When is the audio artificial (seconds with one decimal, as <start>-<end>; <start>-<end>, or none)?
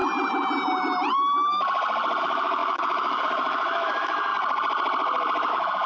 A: 2.2-4.3; 5.5-5.9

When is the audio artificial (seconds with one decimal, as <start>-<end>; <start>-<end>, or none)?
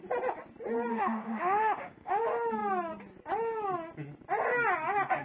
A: 0.9-2.1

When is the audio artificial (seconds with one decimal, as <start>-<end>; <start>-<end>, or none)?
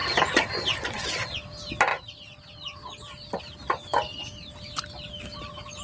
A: none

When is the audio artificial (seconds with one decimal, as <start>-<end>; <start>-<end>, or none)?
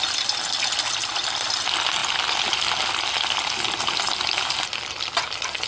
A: none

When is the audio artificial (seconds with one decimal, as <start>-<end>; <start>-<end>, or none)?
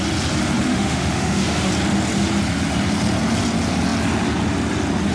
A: 0.7-1.7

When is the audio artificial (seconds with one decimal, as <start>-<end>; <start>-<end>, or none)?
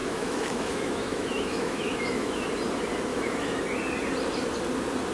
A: 0.0-2.5; 3.1-3.6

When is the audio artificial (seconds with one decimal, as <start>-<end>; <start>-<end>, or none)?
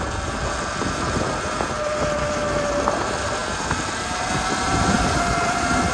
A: 2.2-2.7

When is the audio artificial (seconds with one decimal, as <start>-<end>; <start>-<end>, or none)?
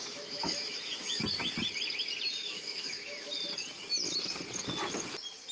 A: 0.0-1.2; 2.4-3.3